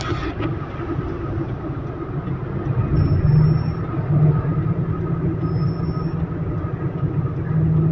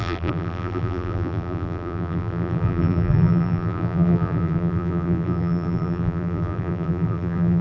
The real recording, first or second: first